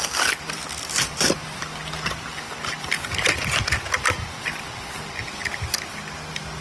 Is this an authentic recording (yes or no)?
yes